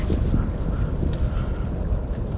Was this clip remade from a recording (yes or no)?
no